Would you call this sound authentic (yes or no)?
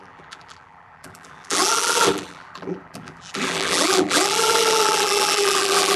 no